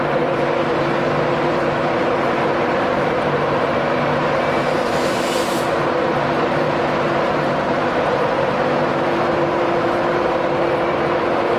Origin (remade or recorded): remade